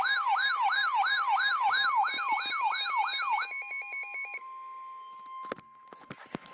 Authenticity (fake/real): real